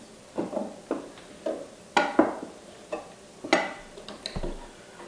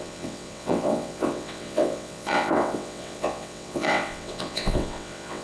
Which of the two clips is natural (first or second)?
first